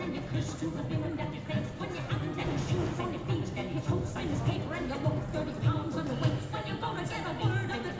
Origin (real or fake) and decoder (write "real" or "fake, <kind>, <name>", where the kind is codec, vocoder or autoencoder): real